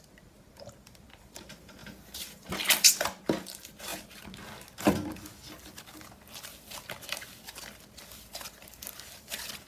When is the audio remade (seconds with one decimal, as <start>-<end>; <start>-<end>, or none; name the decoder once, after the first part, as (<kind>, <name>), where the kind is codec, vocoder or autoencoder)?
0.0-3.9 (vocoder, BigVGAN v2); 4.9-5.6; 7.6-9.7